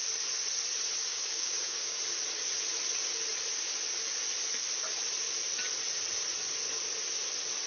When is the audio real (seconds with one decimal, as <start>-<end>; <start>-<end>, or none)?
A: 0.0-1.1; 2.0-7.7